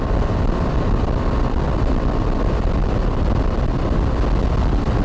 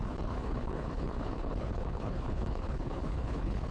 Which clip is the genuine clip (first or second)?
first